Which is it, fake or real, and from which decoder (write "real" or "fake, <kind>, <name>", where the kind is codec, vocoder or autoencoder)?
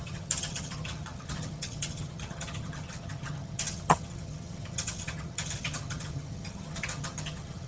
fake, vocoder, HiFi-GAN